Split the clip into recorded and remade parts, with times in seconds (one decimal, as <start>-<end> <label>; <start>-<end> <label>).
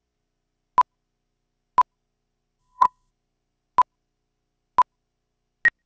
0.0-2.6 recorded; 2.6-3.1 remade; 3.1-5.9 recorded